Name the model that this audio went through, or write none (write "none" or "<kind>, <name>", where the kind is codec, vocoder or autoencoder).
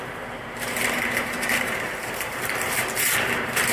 vocoder, BigVGAN v2